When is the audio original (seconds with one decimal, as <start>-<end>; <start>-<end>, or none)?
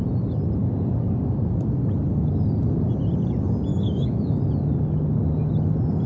0.0-3.7; 4.4-6.1